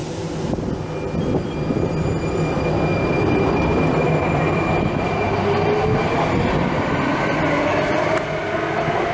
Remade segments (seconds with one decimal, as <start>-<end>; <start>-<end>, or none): none